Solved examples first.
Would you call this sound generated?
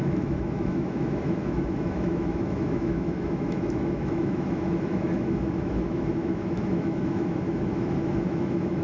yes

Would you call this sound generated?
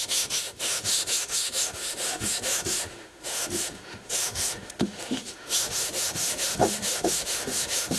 yes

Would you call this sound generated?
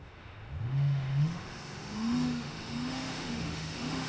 yes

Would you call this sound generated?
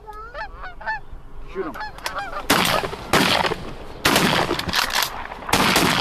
no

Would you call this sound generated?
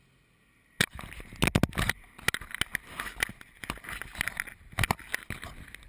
no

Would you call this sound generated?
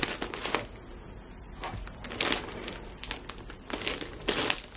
no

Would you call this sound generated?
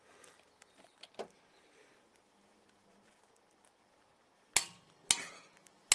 no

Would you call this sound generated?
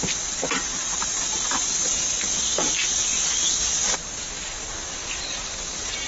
no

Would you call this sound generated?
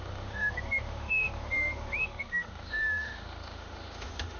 yes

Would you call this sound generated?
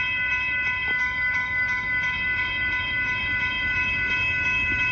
yes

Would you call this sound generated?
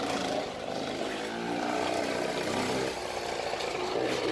no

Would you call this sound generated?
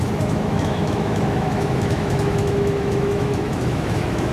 yes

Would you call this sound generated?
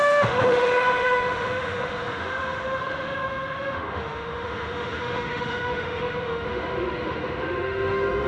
yes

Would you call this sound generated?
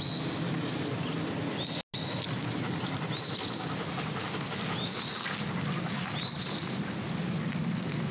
no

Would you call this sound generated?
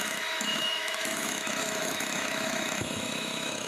yes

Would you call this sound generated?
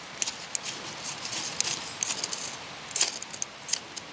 no